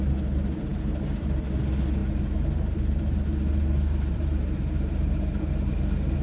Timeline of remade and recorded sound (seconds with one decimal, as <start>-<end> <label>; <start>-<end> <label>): 0.0-2.0 recorded; 2.0-5.7 remade; 5.7-6.2 recorded